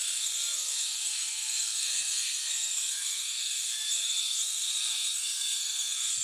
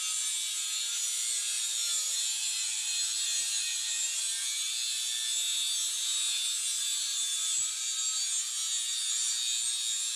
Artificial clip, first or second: first